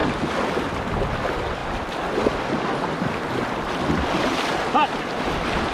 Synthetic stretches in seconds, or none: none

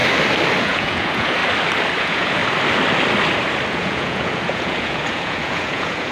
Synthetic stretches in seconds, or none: 0.6-1.4 (vocoder, Vocos); 2.0-2.4; 3.7-6.1

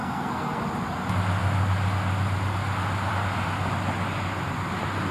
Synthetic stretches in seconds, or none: 0.0-0.6 (codec, SNAC)

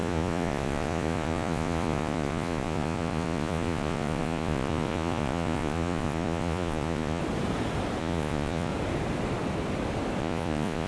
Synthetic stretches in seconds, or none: 0.0-7.2 (vocoder, Vocos); 8.0-8.7; 10.2-10.9

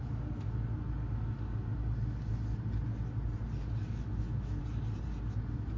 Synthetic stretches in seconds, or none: 3.8-4.6 (autoencoder, DAC-VAE)

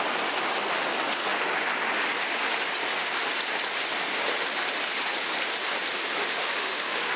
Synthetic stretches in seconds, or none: 6.2-7.2 (autoencoder, DAC-VAE)

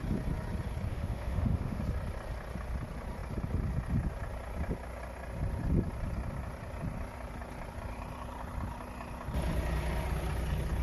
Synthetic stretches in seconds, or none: 0.9-1.8 (autoencoder, DAC-VAE)

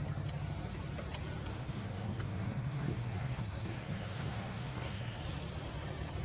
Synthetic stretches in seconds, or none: 1.5-5.2 (codec, SNAC)